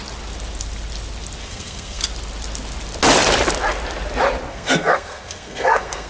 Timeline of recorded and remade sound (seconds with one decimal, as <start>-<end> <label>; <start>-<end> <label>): 0.0-1.4 recorded; 1.4-2.0 remade; 2.0-4.5 recorded; 4.5-6.1 remade